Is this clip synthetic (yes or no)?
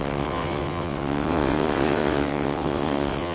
yes